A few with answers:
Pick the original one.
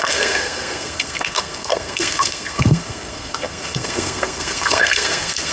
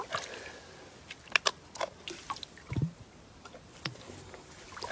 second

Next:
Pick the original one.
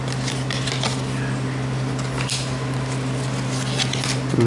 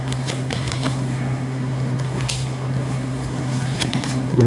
first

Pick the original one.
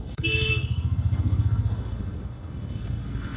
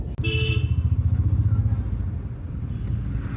second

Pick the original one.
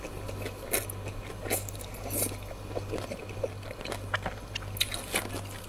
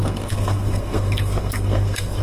first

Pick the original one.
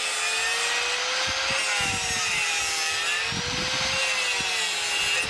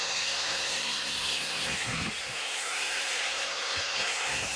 first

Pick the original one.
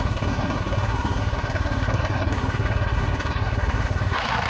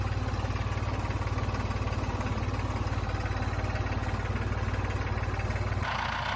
second